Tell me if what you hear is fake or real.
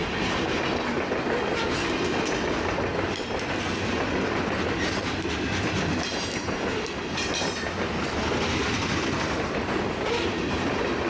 real